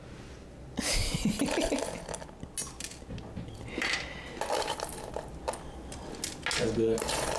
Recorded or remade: recorded